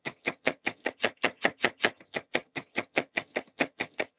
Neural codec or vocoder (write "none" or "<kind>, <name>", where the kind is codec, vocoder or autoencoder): vocoder, HiFi-GAN